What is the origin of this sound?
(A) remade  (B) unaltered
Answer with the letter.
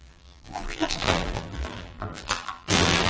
A